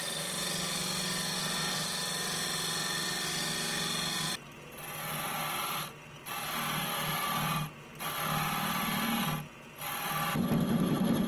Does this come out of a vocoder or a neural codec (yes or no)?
no